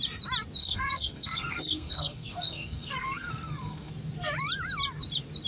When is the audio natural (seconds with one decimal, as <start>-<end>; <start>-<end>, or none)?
0.0-0.6; 3.9-5.5